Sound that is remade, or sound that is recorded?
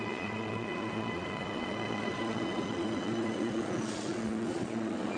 remade